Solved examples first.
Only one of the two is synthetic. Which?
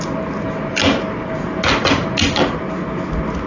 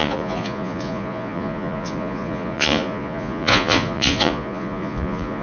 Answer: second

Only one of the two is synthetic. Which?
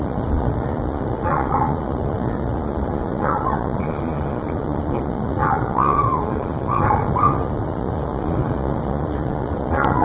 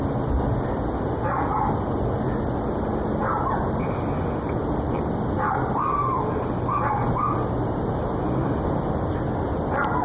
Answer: first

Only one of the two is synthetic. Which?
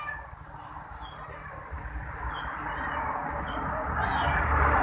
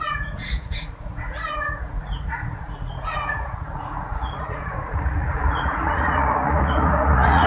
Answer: second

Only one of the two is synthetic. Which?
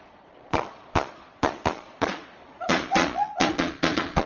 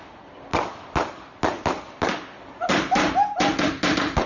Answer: first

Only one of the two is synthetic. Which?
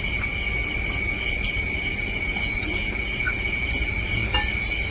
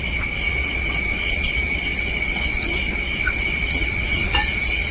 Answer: second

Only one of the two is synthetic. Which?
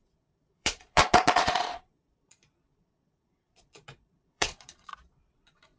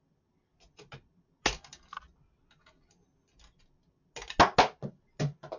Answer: first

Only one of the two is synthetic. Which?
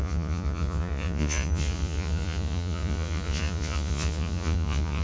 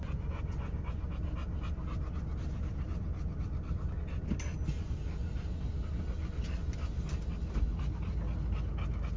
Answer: first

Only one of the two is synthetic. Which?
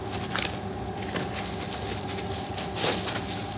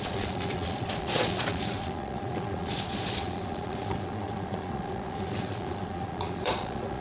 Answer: second